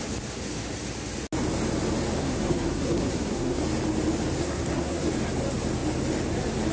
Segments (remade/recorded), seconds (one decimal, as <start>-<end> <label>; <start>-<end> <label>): 0.0-2.2 recorded; 2.2-3.6 remade; 3.6-4.4 recorded; 4.4-5.1 remade; 5.1-6.7 recorded